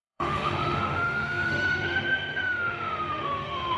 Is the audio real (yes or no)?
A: no